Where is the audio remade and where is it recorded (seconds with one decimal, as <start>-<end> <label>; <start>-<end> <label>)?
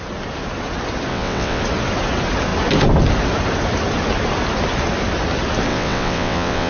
0.0-1.1 recorded; 1.1-1.6 remade; 1.6-5.7 recorded; 5.7-6.7 remade